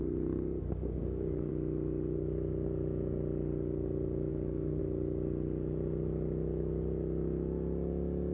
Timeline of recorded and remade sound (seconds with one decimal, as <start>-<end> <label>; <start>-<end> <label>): 0.0-1.0 recorded; 1.0-1.5 remade; 1.5-4.3 recorded; 4.3-4.8 remade; 4.8-8.3 recorded